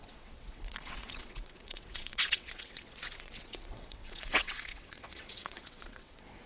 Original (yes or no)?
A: no